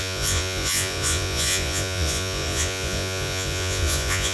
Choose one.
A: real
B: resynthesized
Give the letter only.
B